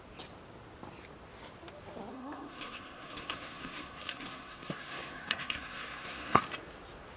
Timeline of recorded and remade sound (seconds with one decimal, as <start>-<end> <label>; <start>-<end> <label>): 0.0-2.1 recorded; 2.1-6.4 remade; 6.4-7.2 recorded